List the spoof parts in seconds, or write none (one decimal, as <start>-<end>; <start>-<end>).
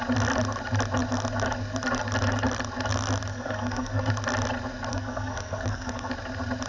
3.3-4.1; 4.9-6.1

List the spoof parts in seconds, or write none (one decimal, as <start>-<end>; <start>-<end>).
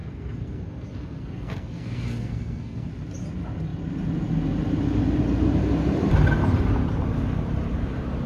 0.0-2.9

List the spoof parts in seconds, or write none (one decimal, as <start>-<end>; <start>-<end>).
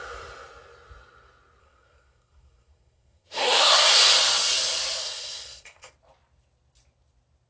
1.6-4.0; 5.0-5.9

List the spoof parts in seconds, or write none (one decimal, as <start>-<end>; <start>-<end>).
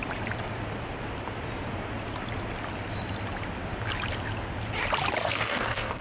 5.2-6.0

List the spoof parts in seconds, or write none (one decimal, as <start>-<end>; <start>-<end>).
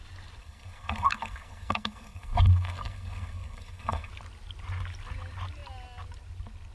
0.4-4.1